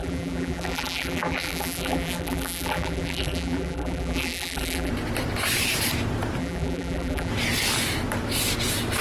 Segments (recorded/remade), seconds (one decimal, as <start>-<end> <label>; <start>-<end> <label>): 0.0-4.9 remade; 4.9-6.4 recorded; 6.4-7.3 remade; 7.3-9.0 recorded